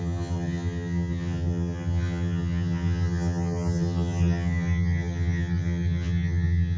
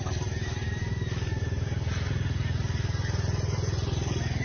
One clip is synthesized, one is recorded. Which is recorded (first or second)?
second